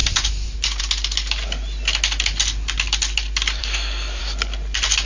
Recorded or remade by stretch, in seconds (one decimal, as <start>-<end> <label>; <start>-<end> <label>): 0.0-3.6 recorded; 3.6-4.2 remade; 4.2-5.1 recorded